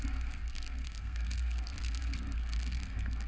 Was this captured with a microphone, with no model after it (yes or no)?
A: no